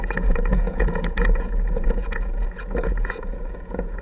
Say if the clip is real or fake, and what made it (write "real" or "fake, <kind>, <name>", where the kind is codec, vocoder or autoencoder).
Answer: fake, vocoder, Vocos